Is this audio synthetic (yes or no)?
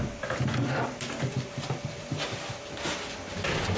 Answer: no